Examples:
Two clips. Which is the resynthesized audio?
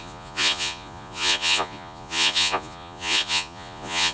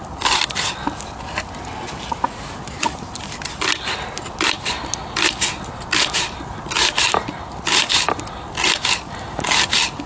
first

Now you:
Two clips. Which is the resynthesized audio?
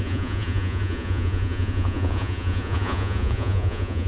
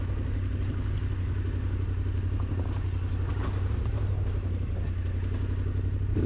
first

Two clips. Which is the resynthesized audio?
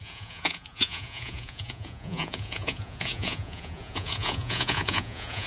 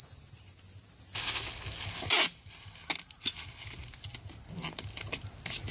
first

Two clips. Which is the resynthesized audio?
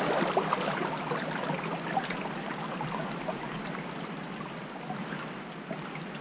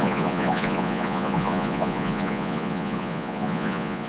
second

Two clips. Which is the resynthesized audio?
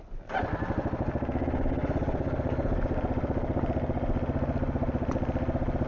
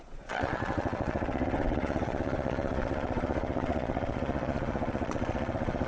second